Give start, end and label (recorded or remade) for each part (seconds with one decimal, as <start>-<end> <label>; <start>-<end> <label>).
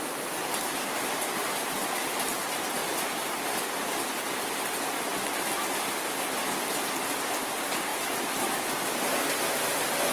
0.0-7.9 recorded; 7.9-8.7 remade; 8.7-10.1 recorded